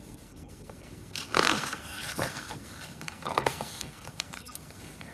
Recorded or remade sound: remade